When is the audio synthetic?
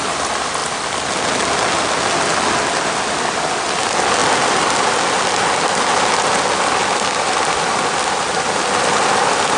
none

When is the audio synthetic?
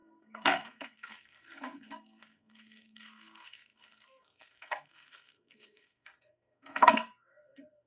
0.0-7.9 (codec, SNAC)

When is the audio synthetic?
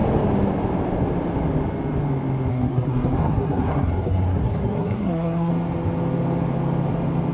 2.5-5.5 (codec, SNAC)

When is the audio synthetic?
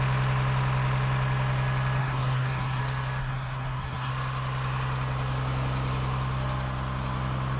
2.0-2.8 (codec, SNAC); 3.2-4.1